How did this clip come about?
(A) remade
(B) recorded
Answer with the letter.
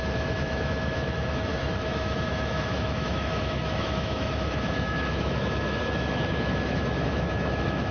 A